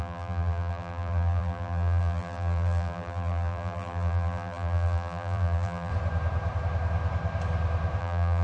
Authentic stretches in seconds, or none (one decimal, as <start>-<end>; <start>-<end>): 5.9-8.0